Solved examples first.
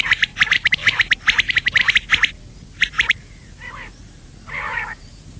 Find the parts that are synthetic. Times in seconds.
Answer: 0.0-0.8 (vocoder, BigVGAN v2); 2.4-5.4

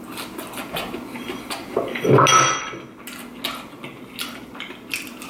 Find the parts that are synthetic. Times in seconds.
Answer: none

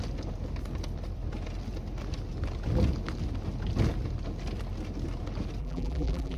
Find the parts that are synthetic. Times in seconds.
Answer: 5.6-6.4 (vocoder, BigVGAN v2)

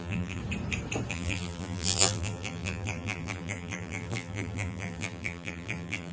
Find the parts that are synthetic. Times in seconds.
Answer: 0.0-0.4 (vocoder, BigVGAN v2); 1.1-6.1

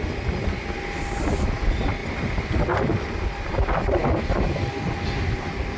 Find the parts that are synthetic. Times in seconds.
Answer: 2.0-3.1 (vocoder, BigVGAN v2)

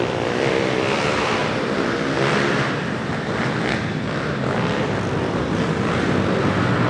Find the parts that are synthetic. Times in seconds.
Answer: none

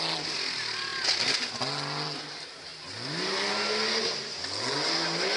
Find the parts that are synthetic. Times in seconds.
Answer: none

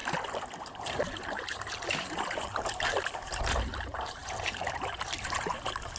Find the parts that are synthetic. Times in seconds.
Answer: 0.6-6.0 (vocoder, BigVGAN v2)